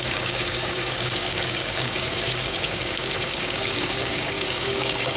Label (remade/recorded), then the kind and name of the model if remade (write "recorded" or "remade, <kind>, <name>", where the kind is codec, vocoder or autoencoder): remade, codec, DAC